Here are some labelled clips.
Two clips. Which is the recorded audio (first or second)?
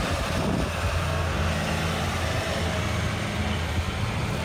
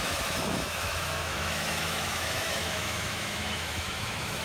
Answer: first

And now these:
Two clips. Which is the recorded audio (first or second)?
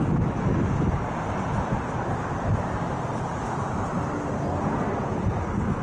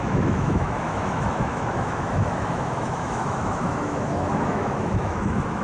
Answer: first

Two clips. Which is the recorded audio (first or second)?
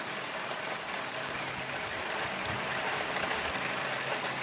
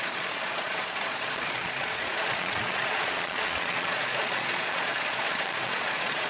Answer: first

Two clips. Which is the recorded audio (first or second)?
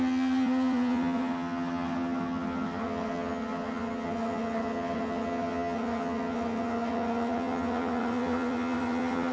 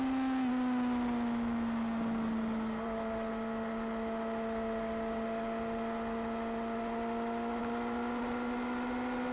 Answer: second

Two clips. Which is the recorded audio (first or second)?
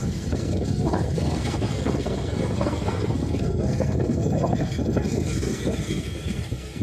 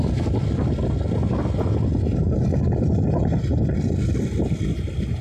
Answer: second